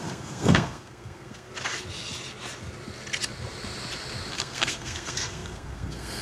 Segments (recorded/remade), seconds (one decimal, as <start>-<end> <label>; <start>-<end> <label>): 0.0-1.5 remade; 1.5-4.3 recorded; 4.3-6.2 remade